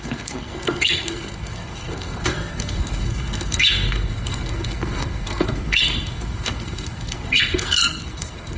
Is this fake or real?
fake